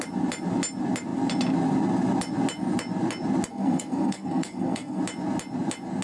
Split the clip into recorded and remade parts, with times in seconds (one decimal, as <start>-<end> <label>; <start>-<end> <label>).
0.0-3.5 recorded; 3.5-5.0 remade; 5.0-6.0 recorded